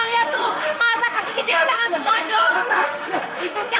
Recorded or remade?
remade